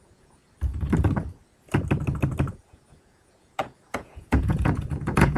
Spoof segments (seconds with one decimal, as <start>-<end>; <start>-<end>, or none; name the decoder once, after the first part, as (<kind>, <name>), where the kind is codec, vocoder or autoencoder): 0.0-0.4 (vocoder, Vocos); 2.5-5.4